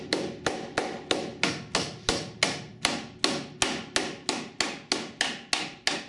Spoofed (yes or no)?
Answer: no